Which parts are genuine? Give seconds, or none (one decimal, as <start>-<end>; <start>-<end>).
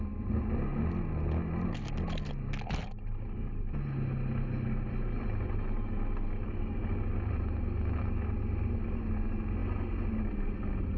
0.0-11.0